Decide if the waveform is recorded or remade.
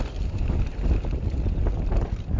recorded